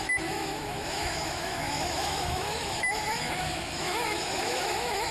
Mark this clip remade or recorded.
remade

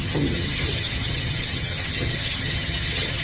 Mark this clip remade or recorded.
remade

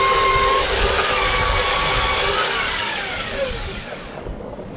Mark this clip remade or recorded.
remade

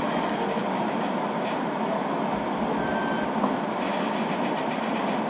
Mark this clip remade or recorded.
recorded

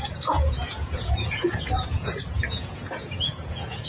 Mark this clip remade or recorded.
remade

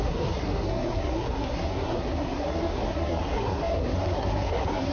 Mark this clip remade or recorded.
remade